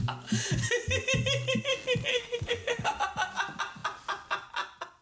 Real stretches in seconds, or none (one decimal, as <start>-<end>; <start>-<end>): 0.0-2.1; 3.0-5.0